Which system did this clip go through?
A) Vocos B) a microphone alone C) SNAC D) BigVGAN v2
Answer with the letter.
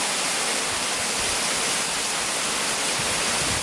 B